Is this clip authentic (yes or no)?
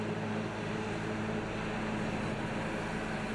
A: yes